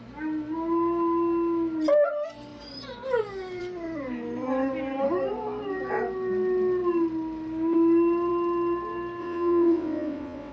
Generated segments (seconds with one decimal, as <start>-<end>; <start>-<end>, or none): 9.2-10.5